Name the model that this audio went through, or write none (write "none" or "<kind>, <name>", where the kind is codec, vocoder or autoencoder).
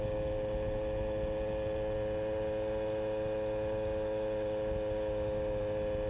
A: none